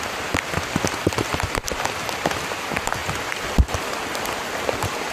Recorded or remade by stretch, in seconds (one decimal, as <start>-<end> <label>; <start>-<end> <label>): 0.0-5.1 recorded